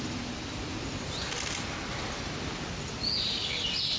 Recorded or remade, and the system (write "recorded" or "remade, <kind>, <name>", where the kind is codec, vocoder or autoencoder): recorded